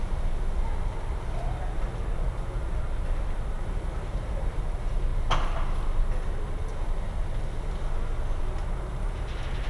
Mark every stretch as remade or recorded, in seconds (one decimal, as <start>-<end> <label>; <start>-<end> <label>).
0.0-9.7 recorded